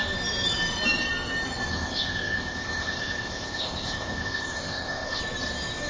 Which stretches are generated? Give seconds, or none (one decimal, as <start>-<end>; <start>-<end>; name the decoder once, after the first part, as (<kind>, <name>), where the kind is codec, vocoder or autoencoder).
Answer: 1.7-5.2 (codec, ZipCodec)